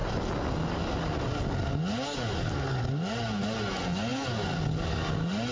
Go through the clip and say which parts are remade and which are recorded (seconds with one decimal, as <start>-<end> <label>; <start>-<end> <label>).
0.0-5.5 recorded